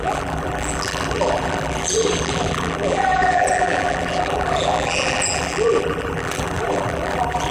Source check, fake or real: fake